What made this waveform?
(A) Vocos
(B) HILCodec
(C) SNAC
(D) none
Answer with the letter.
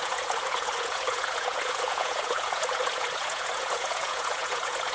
A